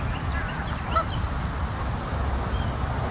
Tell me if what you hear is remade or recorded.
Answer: recorded